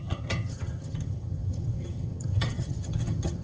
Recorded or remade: remade